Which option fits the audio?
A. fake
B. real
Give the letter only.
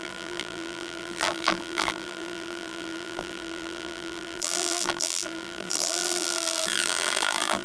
A